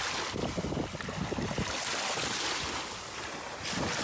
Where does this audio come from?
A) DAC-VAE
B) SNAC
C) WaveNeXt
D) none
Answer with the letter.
D